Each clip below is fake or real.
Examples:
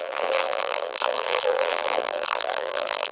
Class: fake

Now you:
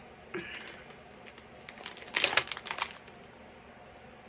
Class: real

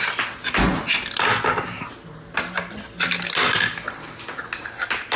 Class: real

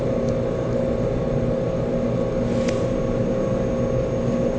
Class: real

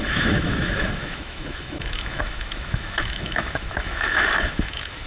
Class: fake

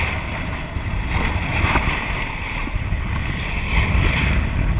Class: real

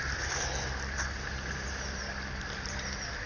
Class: real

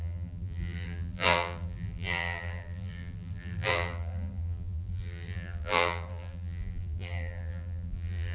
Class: fake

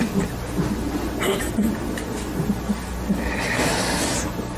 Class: real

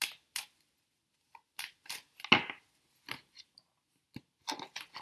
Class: real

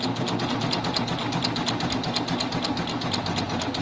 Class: real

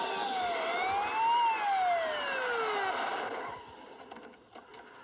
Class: real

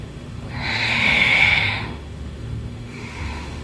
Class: fake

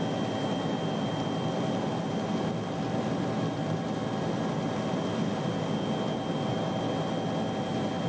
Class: real